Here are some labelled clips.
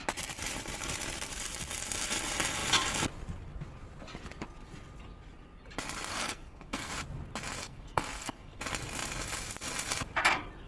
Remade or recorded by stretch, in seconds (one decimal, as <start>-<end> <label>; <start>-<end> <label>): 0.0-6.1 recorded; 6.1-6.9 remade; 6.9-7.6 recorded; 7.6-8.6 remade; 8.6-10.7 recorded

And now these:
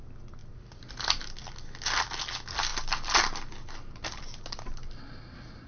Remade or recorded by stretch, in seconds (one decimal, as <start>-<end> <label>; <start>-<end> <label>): 0.0-5.7 recorded

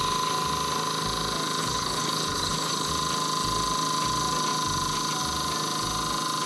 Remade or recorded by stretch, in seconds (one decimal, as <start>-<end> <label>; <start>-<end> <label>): 0.0-1.6 recorded; 1.6-2.9 remade; 2.9-6.5 recorded